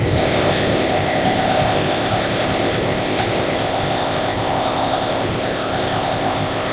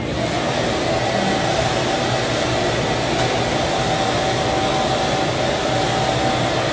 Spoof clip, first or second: first